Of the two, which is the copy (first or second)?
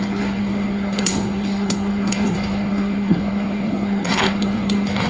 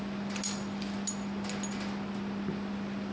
first